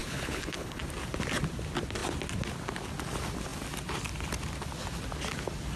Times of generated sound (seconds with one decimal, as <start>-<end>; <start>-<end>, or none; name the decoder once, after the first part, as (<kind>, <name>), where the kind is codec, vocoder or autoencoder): 0.0-0.8 (codec, HILCodec)